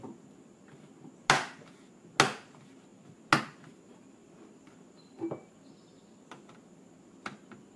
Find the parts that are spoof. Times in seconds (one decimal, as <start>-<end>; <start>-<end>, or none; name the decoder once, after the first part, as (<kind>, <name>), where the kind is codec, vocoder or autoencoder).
none